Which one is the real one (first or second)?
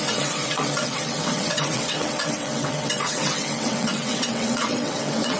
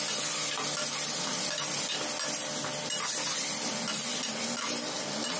second